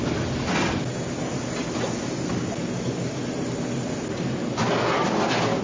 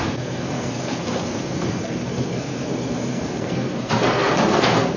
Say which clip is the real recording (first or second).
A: first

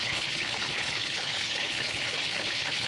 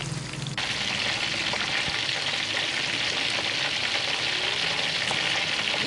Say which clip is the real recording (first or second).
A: second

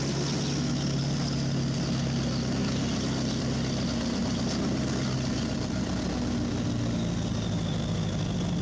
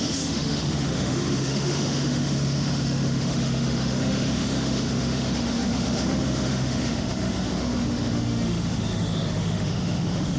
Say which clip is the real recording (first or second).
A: first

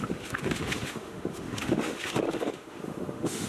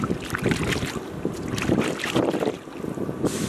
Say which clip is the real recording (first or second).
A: second